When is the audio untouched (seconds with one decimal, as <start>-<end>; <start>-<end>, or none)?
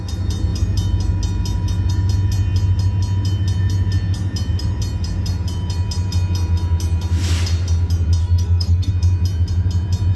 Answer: 0.0-8.2; 8.9-10.2